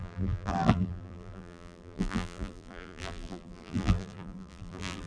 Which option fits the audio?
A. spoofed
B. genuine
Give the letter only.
A